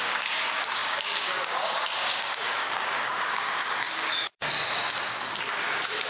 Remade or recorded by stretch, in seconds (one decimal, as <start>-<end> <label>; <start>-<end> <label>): 0.0-4.8 remade; 4.8-5.6 recorded; 5.6-6.1 remade